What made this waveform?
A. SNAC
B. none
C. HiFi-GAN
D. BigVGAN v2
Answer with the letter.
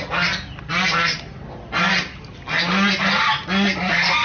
B